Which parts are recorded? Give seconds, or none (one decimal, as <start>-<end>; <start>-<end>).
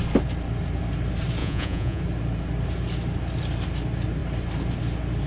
0.0-1.4; 2.0-5.3